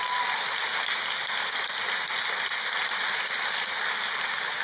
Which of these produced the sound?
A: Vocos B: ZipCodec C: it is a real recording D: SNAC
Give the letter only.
C